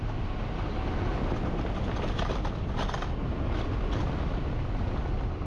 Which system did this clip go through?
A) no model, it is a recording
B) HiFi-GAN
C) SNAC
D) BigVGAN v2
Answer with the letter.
A